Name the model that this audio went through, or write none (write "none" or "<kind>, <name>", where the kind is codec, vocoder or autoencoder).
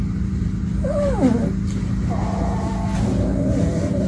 none